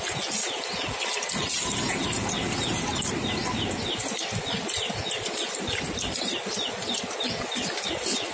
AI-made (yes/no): no